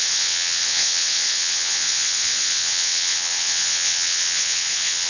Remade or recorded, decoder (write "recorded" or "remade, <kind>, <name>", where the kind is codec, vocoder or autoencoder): remade, vocoder, WaveNeXt